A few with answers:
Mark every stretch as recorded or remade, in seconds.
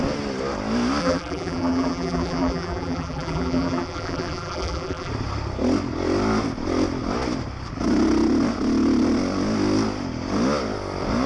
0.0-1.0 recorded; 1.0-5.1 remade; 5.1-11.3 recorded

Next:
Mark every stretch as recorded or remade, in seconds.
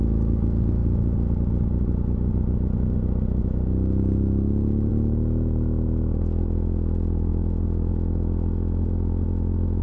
0.0-9.8 recorded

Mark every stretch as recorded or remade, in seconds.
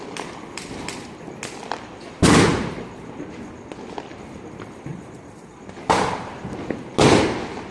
0.0-2.5 recorded; 2.5-3.1 remade; 3.1-4.9 recorded; 4.9-6.4 remade; 6.4-7.7 recorded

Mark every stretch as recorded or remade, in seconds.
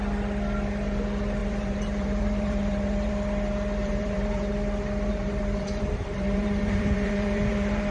0.0-1.4 recorded; 1.4-3.1 remade; 3.1-3.8 recorded; 3.8-4.5 remade; 4.5-5.1 recorded; 5.1-7.9 remade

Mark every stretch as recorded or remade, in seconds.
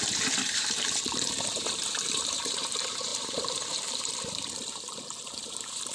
0.0-5.9 remade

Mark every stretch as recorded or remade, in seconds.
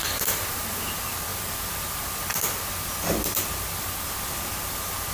0.0-0.8 remade; 0.8-5.1 recorded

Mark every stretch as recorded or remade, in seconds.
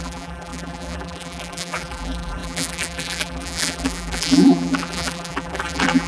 0.0-6.1 remade